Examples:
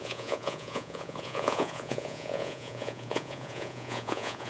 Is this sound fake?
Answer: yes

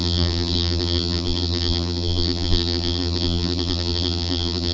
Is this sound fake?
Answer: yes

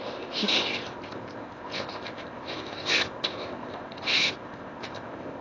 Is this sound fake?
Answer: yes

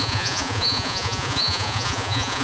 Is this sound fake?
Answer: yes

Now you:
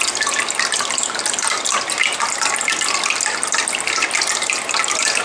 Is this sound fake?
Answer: no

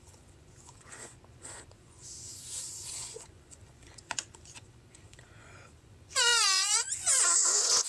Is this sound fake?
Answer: yes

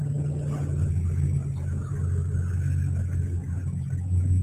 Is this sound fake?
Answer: no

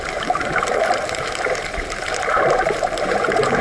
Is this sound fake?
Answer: yes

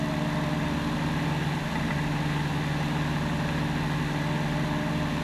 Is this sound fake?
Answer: no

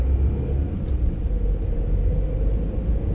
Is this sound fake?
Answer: no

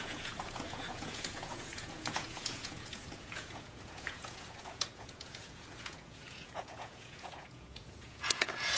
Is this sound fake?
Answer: yes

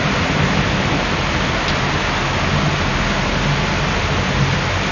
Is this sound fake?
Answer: no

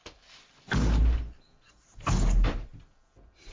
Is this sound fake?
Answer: no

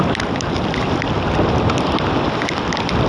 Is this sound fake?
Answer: no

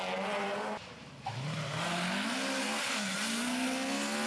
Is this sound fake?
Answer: no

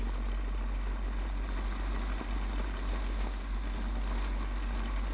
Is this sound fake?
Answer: no